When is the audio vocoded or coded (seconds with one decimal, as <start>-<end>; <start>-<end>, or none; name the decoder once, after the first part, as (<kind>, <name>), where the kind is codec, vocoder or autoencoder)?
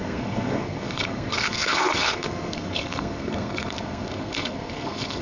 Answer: 0.0-5.2 (codec, SNAC)